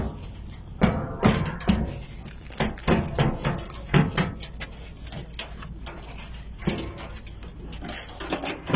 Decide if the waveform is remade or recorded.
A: recorded